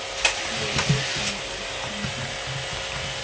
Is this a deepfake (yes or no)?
no